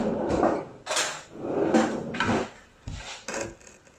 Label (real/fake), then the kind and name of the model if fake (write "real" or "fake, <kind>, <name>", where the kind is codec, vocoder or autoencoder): real